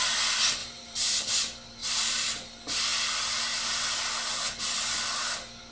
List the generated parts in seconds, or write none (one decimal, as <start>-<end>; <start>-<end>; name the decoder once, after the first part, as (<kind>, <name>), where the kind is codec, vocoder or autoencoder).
0.6-1.3 (vocoder, BigVGAN v2); 1.8-2.3